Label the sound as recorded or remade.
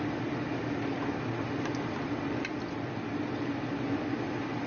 recorded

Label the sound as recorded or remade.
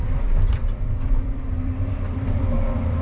remade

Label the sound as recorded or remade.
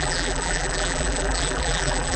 remade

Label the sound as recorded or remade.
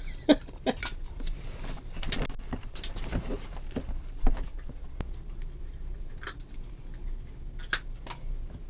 recorded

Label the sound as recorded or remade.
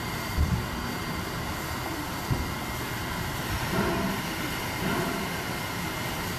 remade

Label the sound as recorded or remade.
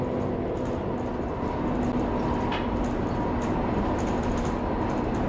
recorded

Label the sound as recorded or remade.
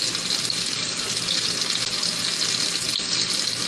recorded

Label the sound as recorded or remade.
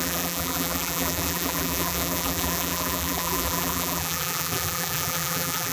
remade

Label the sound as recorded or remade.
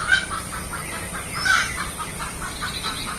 recorded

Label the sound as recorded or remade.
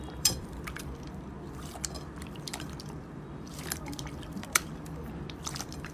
remade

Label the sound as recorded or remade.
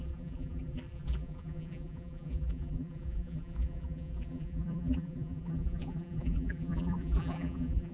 remade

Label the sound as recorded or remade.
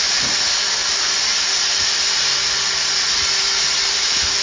recorded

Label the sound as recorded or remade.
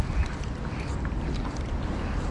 remade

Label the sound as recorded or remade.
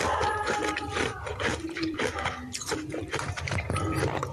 remade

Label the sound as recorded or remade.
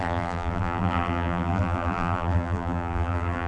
remade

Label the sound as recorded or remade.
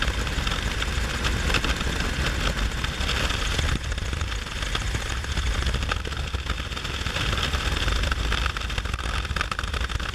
recorded